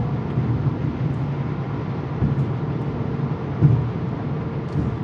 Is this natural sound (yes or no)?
yes